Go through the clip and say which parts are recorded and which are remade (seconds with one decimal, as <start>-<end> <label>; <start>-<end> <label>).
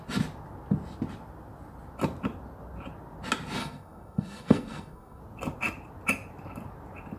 0.0-3.6 recorded; 3.6-5.2 remade; 5.2-7.2 recorded